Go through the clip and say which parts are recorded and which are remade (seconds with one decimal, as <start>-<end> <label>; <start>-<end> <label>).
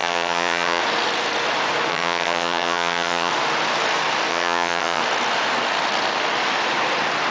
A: 0.0-0.8 remade; 0.8-1.9 recorded; 1.9-3.3 remade; 3.3-4.3 recorded; 4.3-5.0 remade; 5.0-7.3 recorded